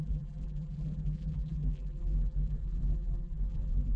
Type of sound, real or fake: fake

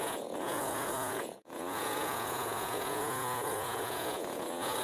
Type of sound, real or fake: fake